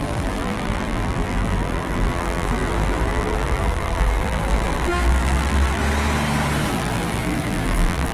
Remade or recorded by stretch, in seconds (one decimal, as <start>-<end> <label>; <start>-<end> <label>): 0.0-5.8 remade; 5.8-6.7 recorded; 6.7-8.1 remade